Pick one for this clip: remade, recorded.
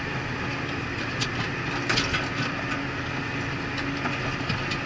recorded